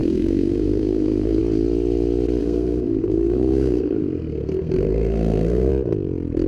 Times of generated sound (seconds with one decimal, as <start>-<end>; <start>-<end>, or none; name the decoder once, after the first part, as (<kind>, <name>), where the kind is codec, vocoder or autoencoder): 0.0-1.4 (codec, SNAC); 2.4-5.7